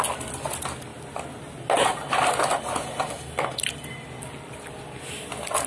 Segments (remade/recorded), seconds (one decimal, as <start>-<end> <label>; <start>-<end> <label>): 0.0-5.7 recorded